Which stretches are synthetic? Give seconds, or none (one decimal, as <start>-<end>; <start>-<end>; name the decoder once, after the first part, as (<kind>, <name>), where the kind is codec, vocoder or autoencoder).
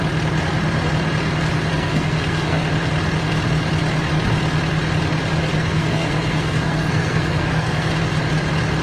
1.7-2.6 (codec, SNAC); 5.5-7.9